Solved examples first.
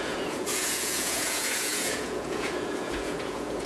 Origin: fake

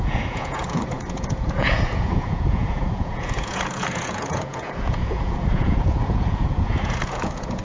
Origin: fake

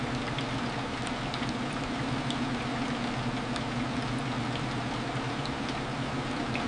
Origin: real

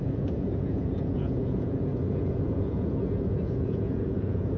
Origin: fake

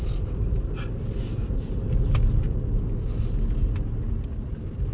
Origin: real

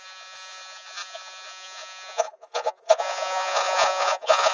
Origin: fake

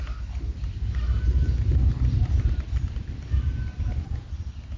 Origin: real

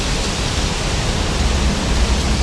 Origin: real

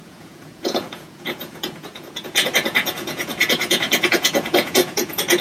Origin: fake